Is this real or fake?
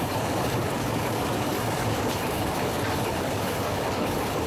fake